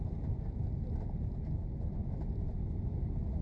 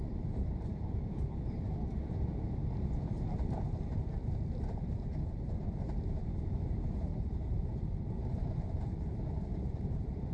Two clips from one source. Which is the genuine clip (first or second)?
first